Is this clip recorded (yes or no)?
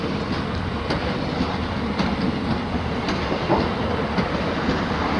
yes